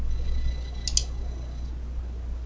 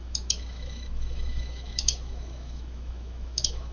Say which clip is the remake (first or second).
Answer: second